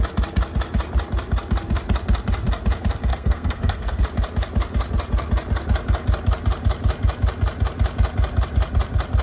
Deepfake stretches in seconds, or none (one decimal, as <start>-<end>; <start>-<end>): 3.1-4.0